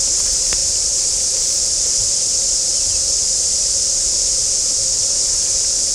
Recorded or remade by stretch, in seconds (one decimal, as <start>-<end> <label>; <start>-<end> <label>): 0.0-5.9 recorded